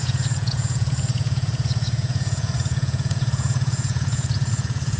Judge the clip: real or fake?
fake